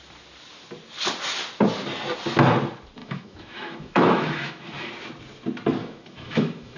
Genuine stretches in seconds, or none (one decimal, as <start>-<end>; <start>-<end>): 0.0-3.0; 4.9-5.8